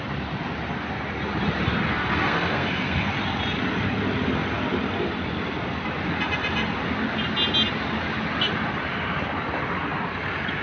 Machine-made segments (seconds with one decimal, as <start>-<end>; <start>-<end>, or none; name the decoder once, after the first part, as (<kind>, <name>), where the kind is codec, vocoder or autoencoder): 1.9-3.1 (codec, SNAC)